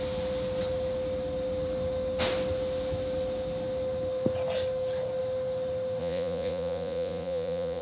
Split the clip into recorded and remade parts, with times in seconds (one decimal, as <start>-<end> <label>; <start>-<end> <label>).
0.0-6.0 recorded; 6.0-7.8 remade